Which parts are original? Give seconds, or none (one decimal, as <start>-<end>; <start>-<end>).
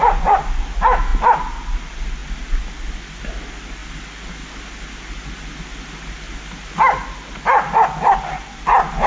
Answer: 0.0-9.1